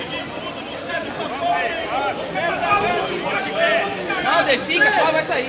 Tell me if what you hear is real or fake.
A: real